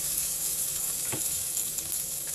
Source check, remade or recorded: remade